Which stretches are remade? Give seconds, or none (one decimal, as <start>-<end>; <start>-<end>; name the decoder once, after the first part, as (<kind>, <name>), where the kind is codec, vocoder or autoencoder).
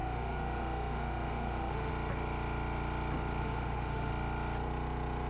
0.0-1.9 (autoencoder, DAC-VAE); 3.4-4.1